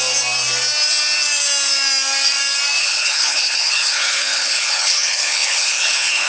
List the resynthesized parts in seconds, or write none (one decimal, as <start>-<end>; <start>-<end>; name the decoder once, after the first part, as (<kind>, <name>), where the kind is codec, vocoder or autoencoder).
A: 2.8-6.3 (codec, HILCodec)